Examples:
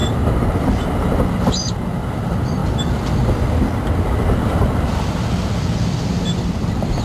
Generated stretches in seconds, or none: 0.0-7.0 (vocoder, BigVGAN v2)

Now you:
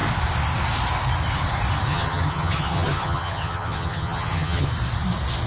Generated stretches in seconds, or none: 1.9-4.7 (vocoder, HiFi-GAN)

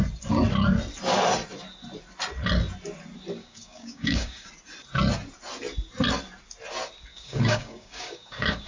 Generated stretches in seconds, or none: 3.4-4.5 (codec, DAC); 7.1-8.7